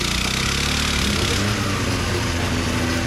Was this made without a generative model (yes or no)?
yes